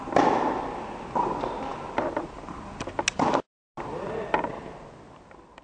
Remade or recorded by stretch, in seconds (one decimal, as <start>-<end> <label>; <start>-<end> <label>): 0.0-5.6 recorded